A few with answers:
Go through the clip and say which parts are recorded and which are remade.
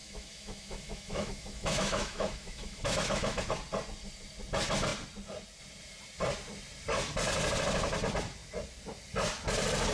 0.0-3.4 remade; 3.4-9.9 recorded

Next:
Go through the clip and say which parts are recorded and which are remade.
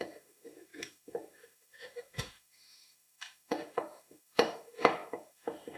0.0-5.8 remade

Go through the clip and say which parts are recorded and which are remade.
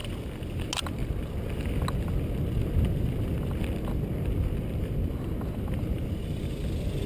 0.0-7.1 recorded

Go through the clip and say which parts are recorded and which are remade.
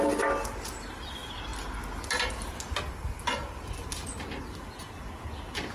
0.0-5.7 recorded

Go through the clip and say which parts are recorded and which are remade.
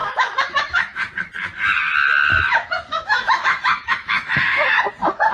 0.0-1.0 remade; 1.0-2.3 recorded; 2.3-4.8 remade; 4.8-5.3 recorded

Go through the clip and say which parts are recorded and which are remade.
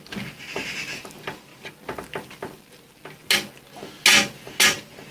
0.0-5.1 recorded